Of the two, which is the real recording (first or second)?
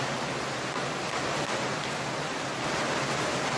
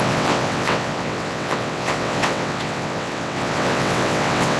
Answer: first